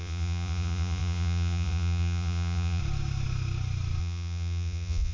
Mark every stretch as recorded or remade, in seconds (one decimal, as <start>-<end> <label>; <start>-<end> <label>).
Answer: 0.0-2.8 remade; 2.8-4.0 recorded; 4.0-5.1 remade